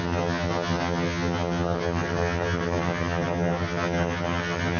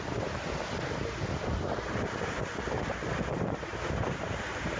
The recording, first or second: second